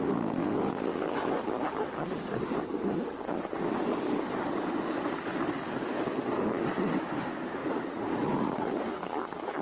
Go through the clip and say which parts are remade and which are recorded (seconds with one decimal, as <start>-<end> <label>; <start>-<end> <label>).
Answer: 0.0-7.6 recorded; 7.6-8.8 remade; 8.8-9.6 recorded